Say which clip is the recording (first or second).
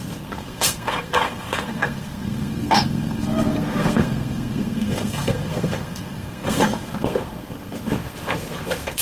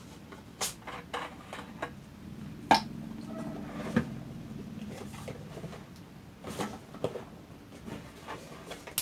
second